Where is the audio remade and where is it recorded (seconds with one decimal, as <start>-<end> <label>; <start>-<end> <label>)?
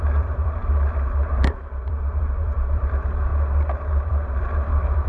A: 0.0-0.6 remade; 0.6-1.5 recorded; 1.5-3.3 remade; 3.3-4.1 recorded; 4.1-5.1 remade